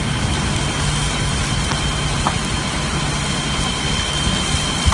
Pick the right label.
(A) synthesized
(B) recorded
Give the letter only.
B